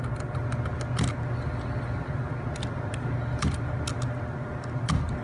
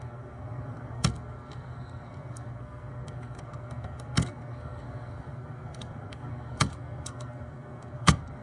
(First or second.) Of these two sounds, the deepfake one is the second